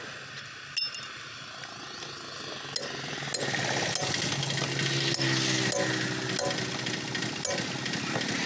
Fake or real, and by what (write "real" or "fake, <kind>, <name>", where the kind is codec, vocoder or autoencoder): real